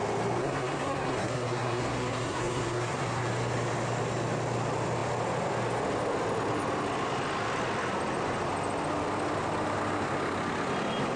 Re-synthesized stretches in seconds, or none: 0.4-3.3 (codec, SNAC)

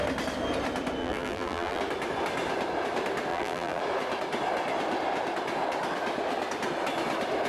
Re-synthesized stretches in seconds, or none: 1.0-1.8 (vocoder, BigVGAN v2); 3.3-3.8